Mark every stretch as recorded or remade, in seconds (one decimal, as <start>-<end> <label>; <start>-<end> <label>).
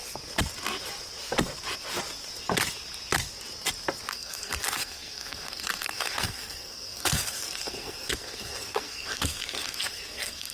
0.0-4.1 recorded; 4.1-10.5 remade